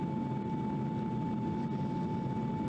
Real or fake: real